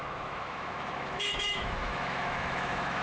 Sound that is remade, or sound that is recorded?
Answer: remade